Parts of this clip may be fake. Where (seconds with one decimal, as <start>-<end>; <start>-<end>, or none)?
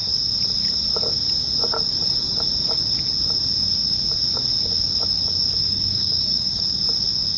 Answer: 5.6-6.6